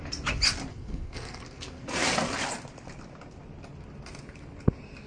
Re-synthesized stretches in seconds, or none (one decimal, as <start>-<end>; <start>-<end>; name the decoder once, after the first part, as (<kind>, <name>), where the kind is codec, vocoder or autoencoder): 0.7-1.8 (codec, SNAC)